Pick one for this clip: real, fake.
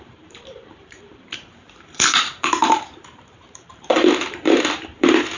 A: fake